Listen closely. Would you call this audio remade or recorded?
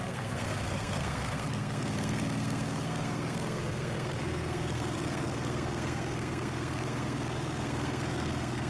remade